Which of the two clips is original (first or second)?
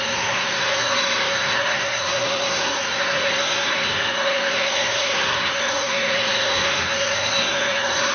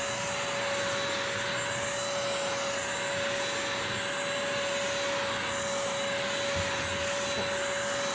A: second